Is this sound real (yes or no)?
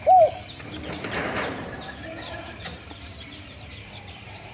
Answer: no